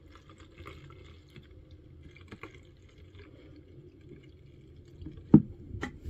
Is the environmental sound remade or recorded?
recorded